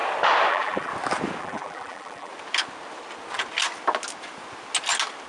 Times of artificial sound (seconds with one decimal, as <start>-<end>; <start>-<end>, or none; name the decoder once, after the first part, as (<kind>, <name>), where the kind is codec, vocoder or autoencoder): 0.5-0.9 (vocoder, BigVGAN v2); 1.4-2.3

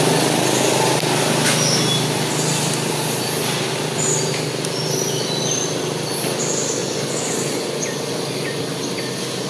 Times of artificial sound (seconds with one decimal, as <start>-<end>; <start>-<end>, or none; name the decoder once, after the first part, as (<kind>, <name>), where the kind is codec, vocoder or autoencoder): 6.8-8.6 (vocoder, Vocos)

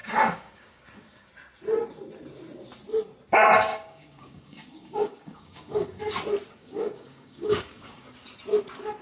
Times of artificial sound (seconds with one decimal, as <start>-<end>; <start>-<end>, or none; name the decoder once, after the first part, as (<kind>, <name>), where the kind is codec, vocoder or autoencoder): 0.0-1.3 (codec, DAC); 3.7-6.0; 6.6-8.1

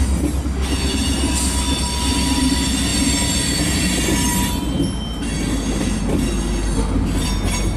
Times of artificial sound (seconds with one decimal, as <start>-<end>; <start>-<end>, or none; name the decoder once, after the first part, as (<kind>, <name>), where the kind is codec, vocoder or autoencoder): none